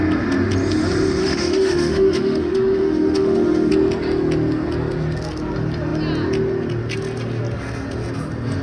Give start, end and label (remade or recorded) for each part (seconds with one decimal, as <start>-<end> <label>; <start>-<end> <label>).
0.0-1.2 recorded; 1.2-3.7 remade; 3.7-8.6 recorded